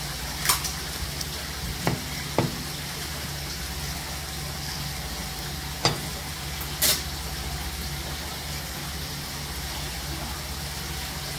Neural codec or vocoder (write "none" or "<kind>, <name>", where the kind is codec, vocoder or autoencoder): none